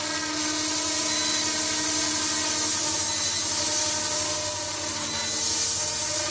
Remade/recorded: recorded